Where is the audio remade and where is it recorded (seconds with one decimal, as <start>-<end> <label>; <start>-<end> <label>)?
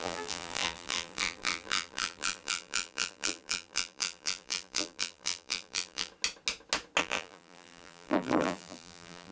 0.0-6.1 remade; 6.1-7.0 recorded; 7.0-9.3 remade